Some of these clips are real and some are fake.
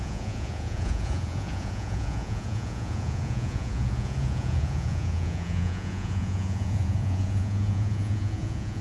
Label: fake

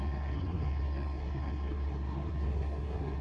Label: fake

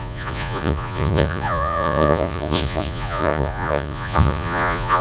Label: fake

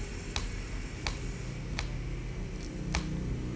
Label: real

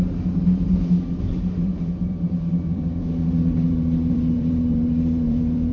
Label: fake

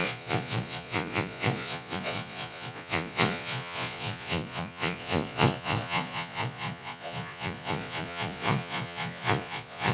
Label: fake